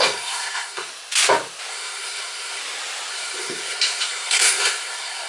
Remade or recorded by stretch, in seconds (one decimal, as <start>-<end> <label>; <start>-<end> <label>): 0.0-0.9 remade; 0.9-1.7 recorded; 1.7-2.6 remade; 2.6-3.1 recorded; 3.1-5.3 remade